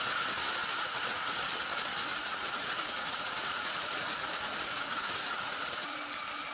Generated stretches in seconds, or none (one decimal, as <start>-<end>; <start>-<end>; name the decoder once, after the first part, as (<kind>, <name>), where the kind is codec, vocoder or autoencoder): 0.6-1.5 (vocoder, Vocos); 2.1-6.0